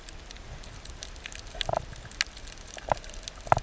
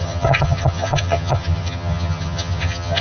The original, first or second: first